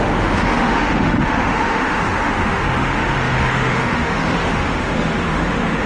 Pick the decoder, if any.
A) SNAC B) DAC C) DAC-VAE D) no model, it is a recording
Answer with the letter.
C